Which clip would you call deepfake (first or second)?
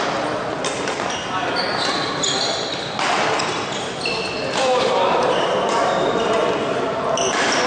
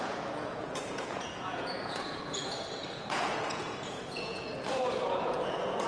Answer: second